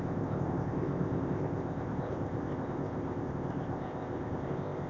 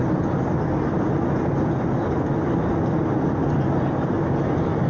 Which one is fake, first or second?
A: first